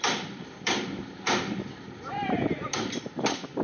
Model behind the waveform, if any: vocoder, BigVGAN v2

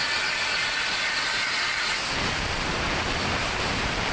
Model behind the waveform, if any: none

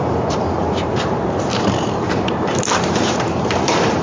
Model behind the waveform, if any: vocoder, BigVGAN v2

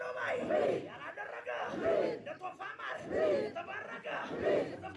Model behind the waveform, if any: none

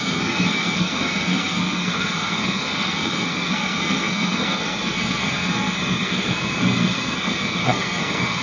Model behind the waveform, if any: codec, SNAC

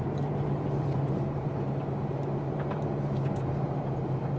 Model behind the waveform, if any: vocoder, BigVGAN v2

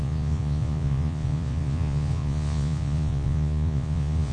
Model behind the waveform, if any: vocoder, Vocos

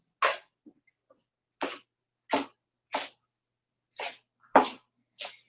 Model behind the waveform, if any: none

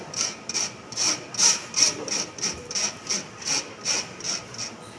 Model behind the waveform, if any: none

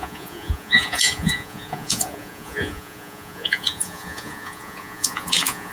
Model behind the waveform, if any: vocoder, Vocos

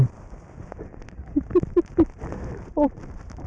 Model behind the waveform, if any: vocoder, BigVGAN v2